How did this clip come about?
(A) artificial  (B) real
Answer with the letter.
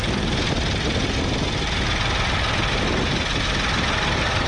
B